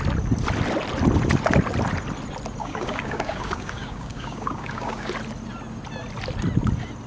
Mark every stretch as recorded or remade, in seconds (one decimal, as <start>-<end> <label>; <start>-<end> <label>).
0.0-2.6 recorded; 2.6-5.1 remade; 5.1-7.1 recorded